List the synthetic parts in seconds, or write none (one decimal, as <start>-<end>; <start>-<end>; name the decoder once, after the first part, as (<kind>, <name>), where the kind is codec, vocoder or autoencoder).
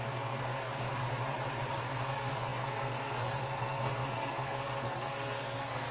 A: 0.0-1.0 (codec, SNAC); 1.7-5.9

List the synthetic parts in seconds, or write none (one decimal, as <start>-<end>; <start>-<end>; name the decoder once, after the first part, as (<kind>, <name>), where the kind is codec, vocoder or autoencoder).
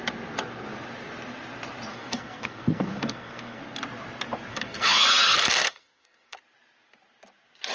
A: 1.9-3.6 (codec, SNAC); 4.5-6.4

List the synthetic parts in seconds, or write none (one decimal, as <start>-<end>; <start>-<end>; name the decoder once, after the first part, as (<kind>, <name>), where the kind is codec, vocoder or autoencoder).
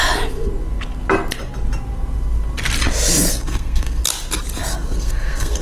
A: 3.3-4.0 (codec, SNAC); 4.7-5.6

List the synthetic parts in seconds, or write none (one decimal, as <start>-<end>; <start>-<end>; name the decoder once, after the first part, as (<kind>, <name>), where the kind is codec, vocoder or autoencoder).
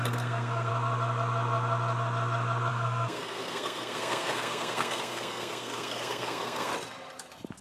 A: 0.0-0.7 (codec, SNAC); 2.7-6.7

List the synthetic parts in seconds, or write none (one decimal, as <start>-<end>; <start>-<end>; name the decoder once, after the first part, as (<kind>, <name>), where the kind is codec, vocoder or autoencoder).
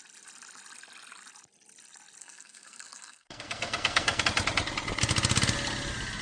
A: 2.2-4.2 (codec, SNAC)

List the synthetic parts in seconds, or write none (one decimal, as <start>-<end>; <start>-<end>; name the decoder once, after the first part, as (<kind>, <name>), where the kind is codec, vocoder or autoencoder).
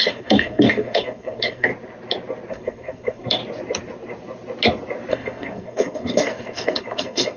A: 0.0-1.7 (codec, SNAC); 2.5-3.4; 5.1-7.4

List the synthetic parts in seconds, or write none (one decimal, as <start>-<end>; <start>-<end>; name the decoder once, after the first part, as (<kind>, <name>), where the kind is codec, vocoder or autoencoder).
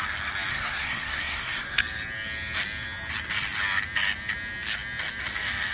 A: 0.5-1.8 (codec, SNAC)